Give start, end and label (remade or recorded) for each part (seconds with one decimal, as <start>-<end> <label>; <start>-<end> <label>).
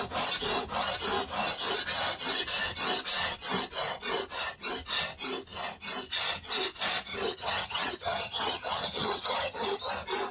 0.0-7.1 recorded; 7.1-9.9 remade; 9.9-10.3 recorded